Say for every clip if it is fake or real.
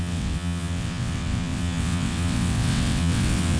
fake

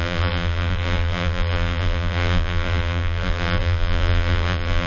fake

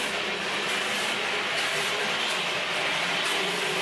real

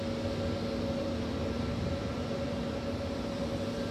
real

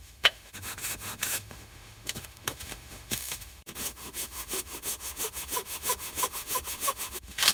fake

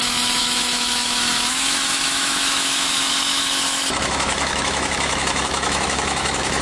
fake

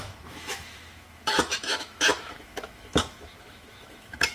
fake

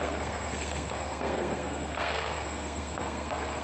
fake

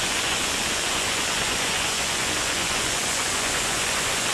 fake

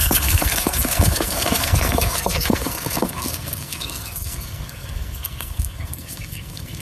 fake